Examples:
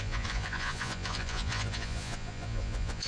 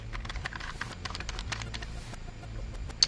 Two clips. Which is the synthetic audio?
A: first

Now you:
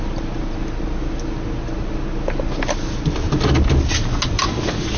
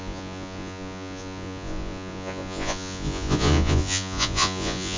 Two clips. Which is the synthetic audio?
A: second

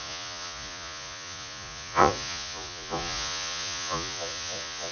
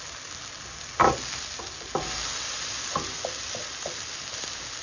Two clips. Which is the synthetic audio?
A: first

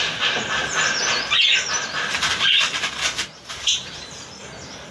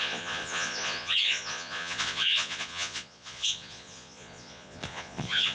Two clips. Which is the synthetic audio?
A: second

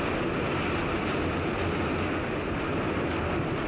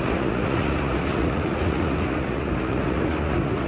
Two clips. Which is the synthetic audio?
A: second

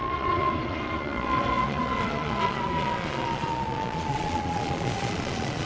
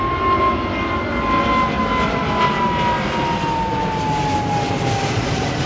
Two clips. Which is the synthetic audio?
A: first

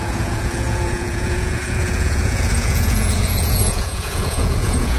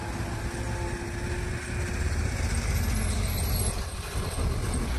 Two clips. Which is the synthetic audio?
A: first